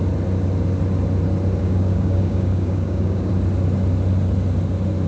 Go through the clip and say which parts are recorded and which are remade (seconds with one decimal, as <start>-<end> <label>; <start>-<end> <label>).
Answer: 0.0-1.6 recorded; 1.6-3.3 remade; 3.3-5.1 recorded